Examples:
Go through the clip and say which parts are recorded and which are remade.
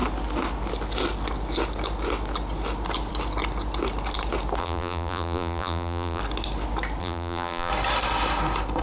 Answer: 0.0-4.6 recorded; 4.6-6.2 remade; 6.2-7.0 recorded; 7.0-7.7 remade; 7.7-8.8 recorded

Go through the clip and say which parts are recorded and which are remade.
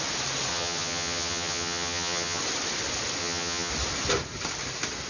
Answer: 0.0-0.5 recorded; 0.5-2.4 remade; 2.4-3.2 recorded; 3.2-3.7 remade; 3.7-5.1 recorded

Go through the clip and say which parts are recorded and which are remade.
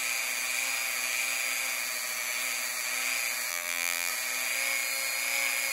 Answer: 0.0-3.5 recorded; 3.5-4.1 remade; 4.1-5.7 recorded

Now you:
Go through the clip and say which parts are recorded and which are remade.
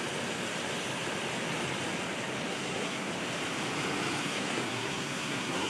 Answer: 0.0-2.5 recorded; 2.5-3.1 remade; 3.1-4.2 recorded; 4.2-5.7 remade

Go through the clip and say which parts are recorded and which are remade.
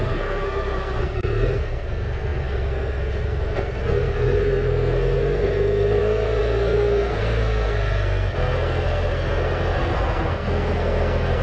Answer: 0.0-11.4 remade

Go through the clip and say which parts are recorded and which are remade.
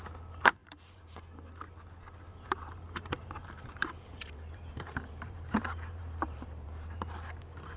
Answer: 0.0-0.6 recorded; 0.6-1.2 remade; 1.2-2.3 recorded; 2.3-7.0 remade; 7.0-7.8 recorded